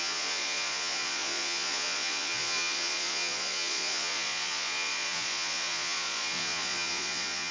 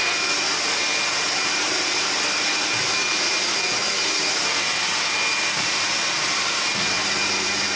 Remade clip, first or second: first